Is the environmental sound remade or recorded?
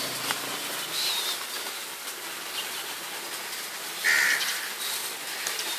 recorded